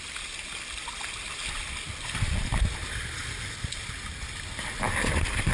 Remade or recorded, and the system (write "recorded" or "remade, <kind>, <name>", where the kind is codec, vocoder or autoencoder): recorded